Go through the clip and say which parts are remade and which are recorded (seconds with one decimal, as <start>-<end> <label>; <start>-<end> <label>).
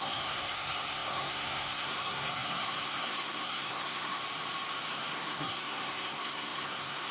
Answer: 0.0-4.2 remade; 4.2-4.9 recorded; 4.9-7.1 remade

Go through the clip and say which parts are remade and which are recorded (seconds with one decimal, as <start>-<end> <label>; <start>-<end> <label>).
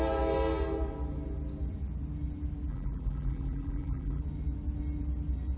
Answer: 0.0-2.7 recorded; 2.7-4.2 remade; 4.2-5.6 recorded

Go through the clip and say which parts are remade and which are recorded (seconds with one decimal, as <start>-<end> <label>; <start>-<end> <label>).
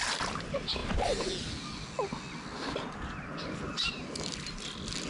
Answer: 0.0-5.1 recorded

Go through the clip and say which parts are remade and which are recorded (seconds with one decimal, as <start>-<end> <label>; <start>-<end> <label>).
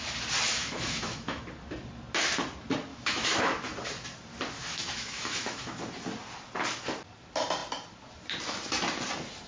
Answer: 0.0-0.6 recorded; 0.6-1.4 remade; 1.4-2.9 recorded; 2.9-3.5 remade; 3.5-4.6 recorded; 4.6-5.8 remade; 5.8-9.5 recorded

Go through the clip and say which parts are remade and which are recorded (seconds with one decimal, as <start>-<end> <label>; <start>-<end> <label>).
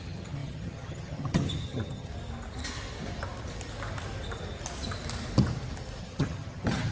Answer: 0.0-2.1 remade; 2.1-6.0 recorded; 6.0-6.9 remade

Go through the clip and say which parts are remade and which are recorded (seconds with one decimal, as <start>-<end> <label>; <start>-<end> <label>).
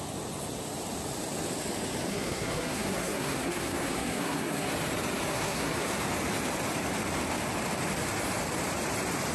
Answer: 0.0-2.1 recorded; 2.1-4.7 remade; 4.7-5.3 recorded; 5.3-6.0 remade; 6.0-9.3 recorded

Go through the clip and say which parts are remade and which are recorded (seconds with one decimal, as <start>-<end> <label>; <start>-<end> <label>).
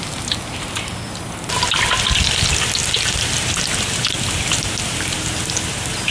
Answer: 0.0-6.1 recorded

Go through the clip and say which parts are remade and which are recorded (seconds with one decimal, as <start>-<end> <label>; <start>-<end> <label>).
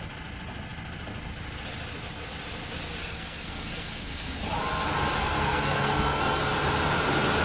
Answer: 0.0-3.0 recorded; 3.0-4.4 remade; 4.4-5.2 recorded; 5.2-6.4 remade; 6.4-7.4 recorded